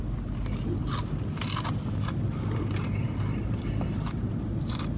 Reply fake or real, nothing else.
real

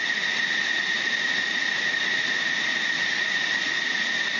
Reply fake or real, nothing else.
real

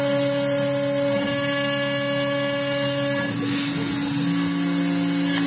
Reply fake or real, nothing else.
real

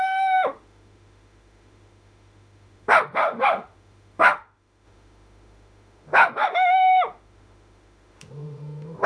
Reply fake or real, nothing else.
fake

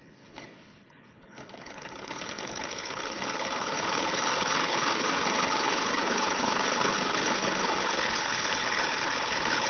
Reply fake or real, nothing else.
fake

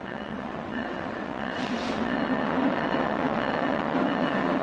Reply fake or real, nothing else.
fake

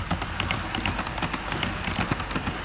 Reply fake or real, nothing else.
real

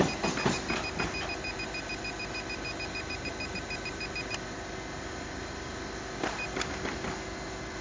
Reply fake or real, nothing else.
real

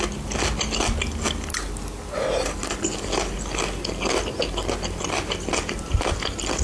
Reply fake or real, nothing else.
real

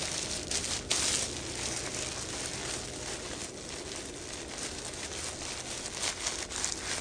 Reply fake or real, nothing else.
real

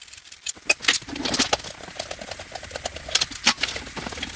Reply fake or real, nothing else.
real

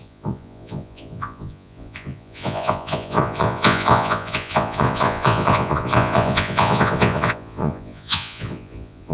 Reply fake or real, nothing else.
fake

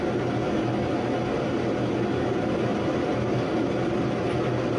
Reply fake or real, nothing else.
real